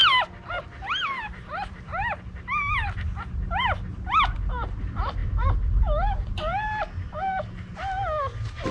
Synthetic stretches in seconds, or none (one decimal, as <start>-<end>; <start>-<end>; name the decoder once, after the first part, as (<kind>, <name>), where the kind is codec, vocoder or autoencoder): 0.5-1.9 (vocoder, BigVGAN v2); 4.8-7.7